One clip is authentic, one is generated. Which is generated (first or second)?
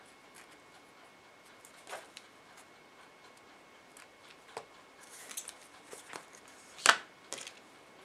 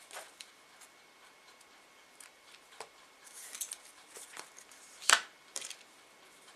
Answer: second